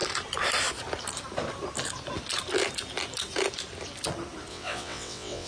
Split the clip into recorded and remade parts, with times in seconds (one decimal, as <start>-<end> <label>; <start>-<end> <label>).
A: 0.0-4.5 recorded; 4.5-5.5 remade